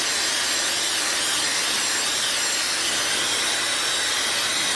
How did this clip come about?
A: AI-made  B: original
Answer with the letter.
B